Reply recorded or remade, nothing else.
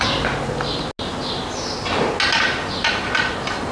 recorded